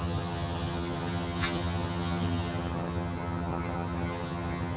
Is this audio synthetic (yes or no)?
yes